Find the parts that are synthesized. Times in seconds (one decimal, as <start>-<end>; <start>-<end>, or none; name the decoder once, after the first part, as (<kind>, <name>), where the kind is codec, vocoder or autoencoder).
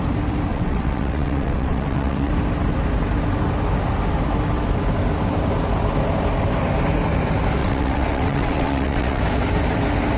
0.5-2.3 (vocoder, WaveNeXt); 7.6-9.2